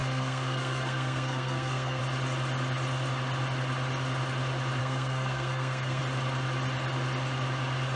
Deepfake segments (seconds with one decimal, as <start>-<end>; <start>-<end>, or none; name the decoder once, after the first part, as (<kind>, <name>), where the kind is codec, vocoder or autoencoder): 0.0-2.0 (codec, SNAC); 4.8-6.0